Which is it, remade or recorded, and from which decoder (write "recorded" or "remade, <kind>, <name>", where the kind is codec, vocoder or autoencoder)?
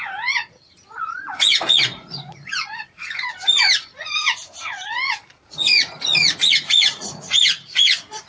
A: remade, vocoder, Vocos